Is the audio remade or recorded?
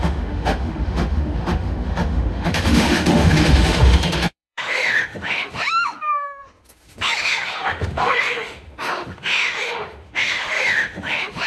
remade